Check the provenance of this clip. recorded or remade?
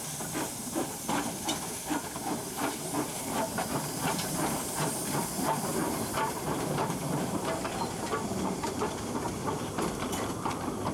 remade